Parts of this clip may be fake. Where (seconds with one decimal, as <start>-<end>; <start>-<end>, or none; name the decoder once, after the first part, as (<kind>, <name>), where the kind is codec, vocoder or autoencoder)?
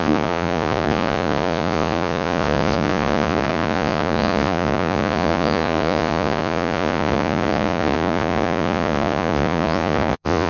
0.0-10.5 (vocoder, Vocos)